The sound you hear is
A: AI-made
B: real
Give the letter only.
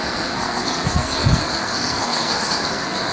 A